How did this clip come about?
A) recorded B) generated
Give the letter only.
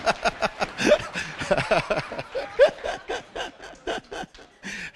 A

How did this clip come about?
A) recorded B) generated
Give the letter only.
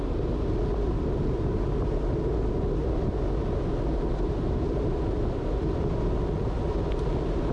A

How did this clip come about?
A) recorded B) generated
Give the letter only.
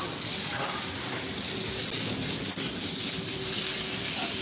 A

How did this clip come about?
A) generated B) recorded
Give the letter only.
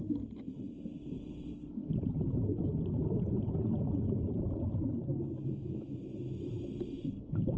B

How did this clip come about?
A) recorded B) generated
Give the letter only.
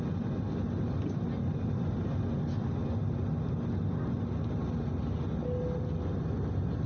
A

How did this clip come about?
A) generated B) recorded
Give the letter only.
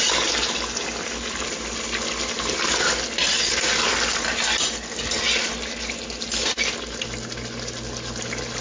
B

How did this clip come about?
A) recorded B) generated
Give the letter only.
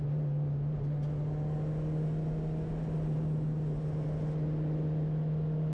A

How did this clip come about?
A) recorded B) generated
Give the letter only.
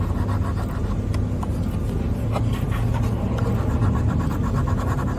A